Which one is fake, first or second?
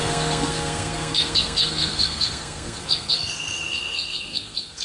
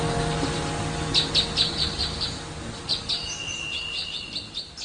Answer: first